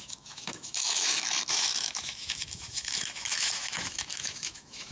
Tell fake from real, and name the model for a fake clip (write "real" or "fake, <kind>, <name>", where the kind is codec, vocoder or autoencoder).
fake, autoencoder, DAC-VAE